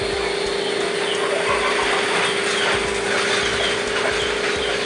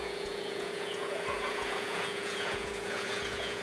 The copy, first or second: second